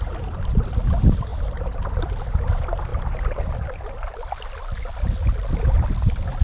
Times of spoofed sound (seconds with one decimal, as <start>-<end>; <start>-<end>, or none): 0.0-6.4